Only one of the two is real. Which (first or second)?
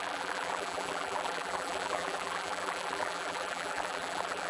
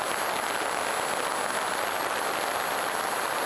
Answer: second